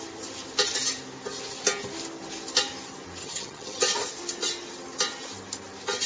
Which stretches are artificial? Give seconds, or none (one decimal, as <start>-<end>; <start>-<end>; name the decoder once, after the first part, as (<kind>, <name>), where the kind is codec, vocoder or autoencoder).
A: 3.2-3.8 (vocoder, HiFi-GAN)